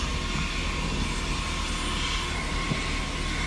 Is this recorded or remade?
recorded